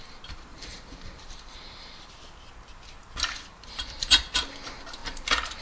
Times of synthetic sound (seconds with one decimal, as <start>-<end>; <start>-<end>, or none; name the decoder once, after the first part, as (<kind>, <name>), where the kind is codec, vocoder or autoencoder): 0.5-2.1 (vocoder, BigVGAN v2); 3.5-4.2; 5.0-5.6